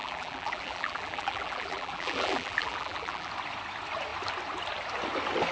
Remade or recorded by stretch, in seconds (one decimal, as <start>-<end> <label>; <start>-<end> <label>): 0.0-3.3 remade; 3.3-5.5 recorded